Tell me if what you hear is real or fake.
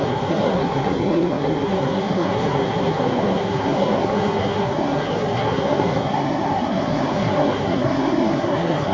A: fake